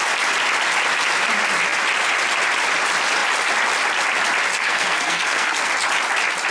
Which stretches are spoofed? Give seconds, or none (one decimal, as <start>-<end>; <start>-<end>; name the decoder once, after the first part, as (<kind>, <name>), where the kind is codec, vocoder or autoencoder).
4.5-5.7 (codec, SNAC)